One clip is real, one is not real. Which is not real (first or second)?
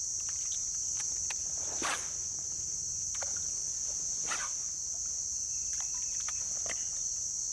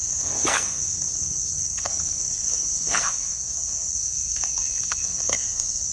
second